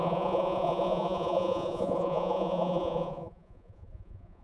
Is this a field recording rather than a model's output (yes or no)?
no